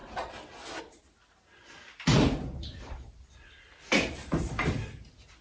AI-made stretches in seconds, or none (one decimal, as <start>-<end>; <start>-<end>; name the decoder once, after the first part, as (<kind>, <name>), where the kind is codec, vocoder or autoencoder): none